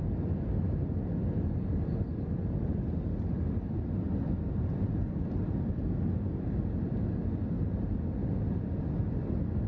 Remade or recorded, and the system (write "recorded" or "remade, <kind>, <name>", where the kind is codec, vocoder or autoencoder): recorded